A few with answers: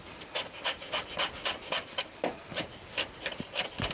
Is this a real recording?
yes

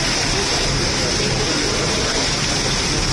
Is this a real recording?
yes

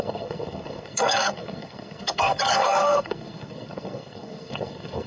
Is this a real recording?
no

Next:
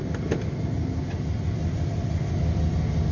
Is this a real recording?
yes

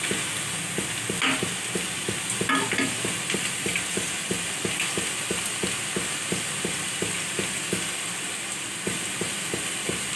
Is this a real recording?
yes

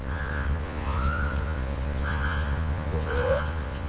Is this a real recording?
no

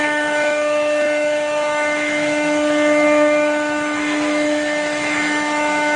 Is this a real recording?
no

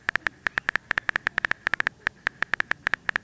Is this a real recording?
yes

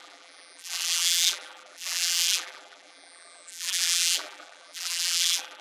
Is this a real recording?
no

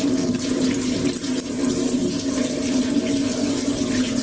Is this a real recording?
yes